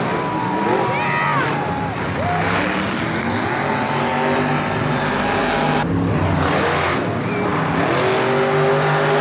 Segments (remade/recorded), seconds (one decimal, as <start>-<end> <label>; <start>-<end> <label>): 0.0-9.2 recorded

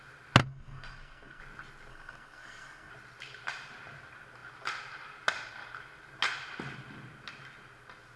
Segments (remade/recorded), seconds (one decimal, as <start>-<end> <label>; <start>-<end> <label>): 0.0-0.4 recorded; 0.4-1.4 remade; 1.4-1.9 recorded; 1.9-2.9 remade; 2.9-8.2 recorded

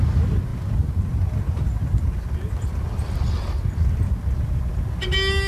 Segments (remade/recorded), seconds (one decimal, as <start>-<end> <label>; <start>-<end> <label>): 0.0-0.5 recorded; 0.5-1.1 remade; 1.1-5.5 recorded

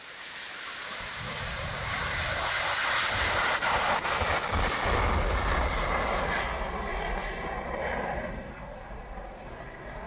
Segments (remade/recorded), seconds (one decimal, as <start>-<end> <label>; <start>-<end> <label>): 0.0-10.1 recorded